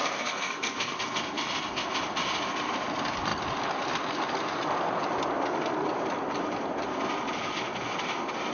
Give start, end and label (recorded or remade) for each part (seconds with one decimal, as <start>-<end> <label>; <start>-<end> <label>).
0.0-1.0 remade; 1.0-8.5 recorded